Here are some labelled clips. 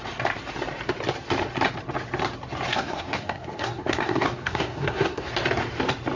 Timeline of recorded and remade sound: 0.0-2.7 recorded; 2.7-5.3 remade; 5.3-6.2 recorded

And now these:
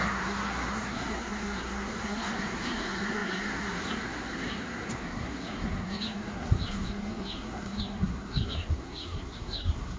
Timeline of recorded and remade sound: 0.0-10.0 remade

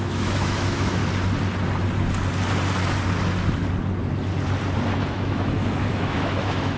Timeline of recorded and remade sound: 0.0-1.0 remade; 1.0-5.1 recorded; 5.1-6.8 remade

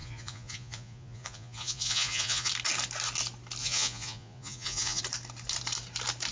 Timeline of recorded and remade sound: 0.0-2.5 remade; 2.5-3.6 recorded; 3.6-5.0 remade; 5.0-6.3 recorded